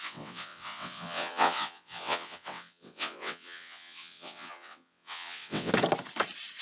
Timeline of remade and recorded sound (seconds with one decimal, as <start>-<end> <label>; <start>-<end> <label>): 0.0-5.7 remade; 5.7-6.6 recorded